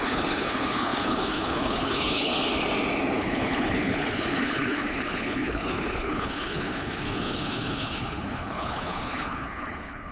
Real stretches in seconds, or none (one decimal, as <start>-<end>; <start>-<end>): 2.3-3.2